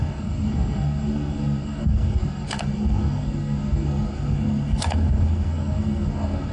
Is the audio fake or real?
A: fake